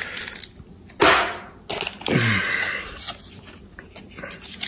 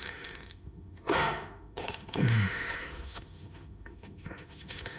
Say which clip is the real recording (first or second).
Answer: first